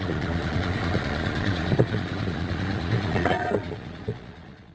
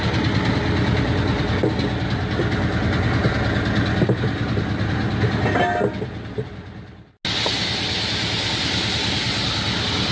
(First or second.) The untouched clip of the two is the second